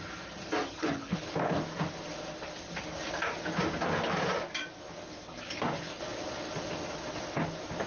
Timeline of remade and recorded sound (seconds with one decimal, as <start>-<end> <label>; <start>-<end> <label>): 0.0-0.8 recorded; 0.8-1.6 remade; 1.6-7.9 recorded